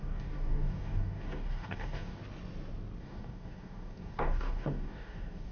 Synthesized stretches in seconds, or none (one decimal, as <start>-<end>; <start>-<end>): 0.0-2.2; 3.0-5.5